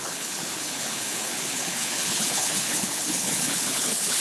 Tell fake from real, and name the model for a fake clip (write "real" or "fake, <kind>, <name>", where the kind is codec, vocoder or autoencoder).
fake, codec, HILCodec